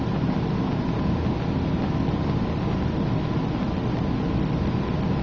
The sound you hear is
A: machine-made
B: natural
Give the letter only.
B